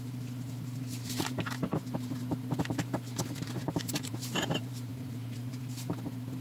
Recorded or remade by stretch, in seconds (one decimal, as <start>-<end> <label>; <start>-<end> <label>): 0.0-6.4 remade